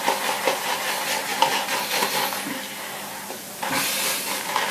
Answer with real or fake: real